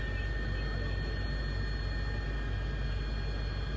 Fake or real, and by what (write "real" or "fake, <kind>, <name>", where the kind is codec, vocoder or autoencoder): real